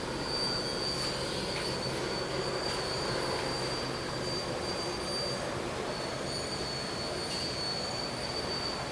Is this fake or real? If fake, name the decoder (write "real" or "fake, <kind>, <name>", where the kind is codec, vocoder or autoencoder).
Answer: real